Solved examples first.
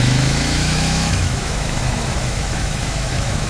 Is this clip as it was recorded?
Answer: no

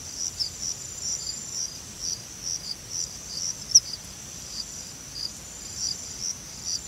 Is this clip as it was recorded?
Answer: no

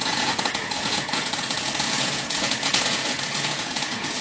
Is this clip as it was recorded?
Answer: no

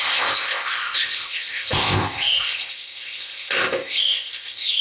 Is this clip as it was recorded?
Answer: no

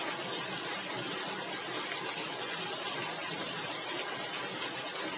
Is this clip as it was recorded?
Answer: yes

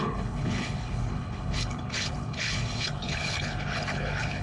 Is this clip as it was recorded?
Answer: no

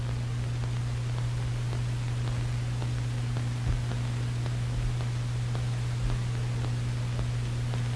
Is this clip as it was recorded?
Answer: yes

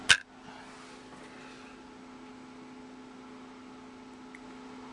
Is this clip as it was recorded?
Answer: yes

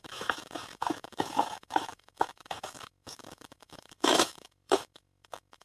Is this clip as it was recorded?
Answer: no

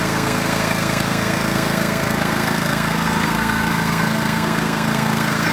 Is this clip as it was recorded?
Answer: no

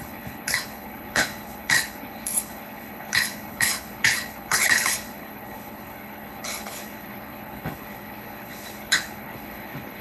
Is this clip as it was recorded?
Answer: no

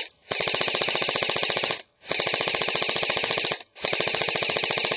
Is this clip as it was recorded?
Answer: yes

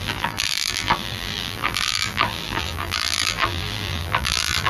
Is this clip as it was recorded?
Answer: no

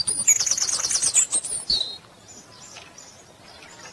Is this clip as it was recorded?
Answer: yes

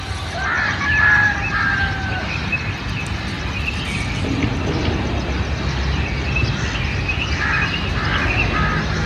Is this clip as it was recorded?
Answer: yes